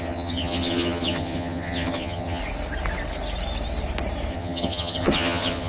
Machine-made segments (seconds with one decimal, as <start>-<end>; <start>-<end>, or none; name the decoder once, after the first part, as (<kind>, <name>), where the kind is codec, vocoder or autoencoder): 0.0-2.4 (vocoder, HiFi-GAN); 4.3-5.7